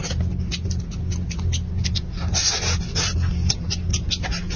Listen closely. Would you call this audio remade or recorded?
recorded